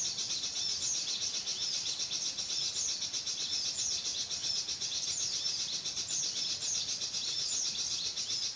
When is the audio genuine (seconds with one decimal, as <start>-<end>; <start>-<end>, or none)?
0.0-8.6